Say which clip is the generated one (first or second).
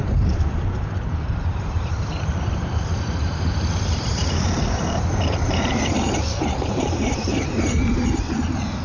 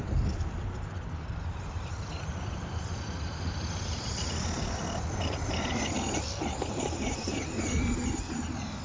first